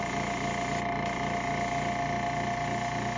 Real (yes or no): yes